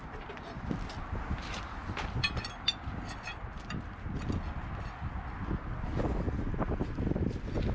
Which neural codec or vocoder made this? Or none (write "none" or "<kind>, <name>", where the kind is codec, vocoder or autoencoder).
none